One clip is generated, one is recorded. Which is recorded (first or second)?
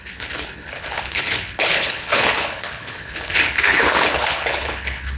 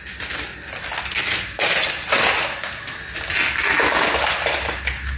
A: second